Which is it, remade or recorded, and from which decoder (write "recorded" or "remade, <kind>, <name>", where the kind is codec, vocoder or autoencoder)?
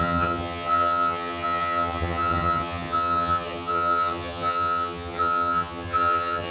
remade, vocoder, HiFi-GAN